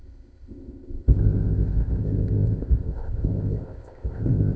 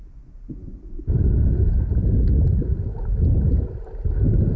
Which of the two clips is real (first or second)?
second